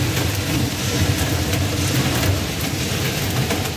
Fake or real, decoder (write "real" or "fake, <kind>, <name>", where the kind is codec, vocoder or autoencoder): real